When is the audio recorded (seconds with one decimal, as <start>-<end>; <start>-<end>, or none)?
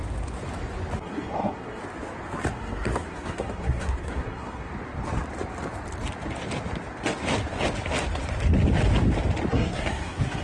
0.0-1.0; 1.8-2.5; 4.7-9.5